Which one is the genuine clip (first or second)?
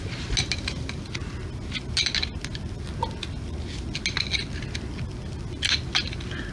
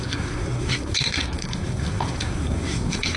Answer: first